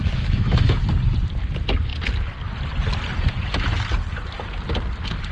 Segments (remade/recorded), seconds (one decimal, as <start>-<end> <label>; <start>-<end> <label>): 0.0-0.8 remade; 0.8-5.3 recorded